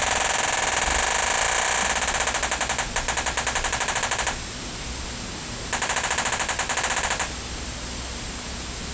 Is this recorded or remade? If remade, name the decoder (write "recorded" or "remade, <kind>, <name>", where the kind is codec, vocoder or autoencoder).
recorded